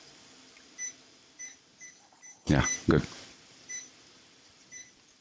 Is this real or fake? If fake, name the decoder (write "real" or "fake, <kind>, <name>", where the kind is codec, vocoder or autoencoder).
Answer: fake, vocoder, BigVGAN v2